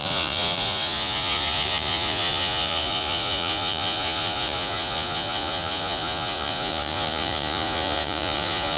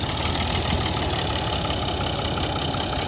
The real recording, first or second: second